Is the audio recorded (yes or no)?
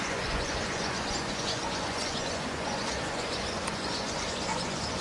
no